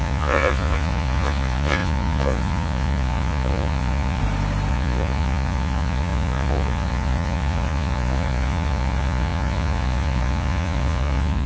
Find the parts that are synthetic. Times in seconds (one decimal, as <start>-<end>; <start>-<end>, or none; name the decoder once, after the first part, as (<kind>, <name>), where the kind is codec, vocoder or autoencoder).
0.0-4.2 (vocoder, Vocos); 4.7-11.5